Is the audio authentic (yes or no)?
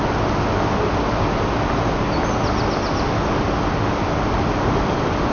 yes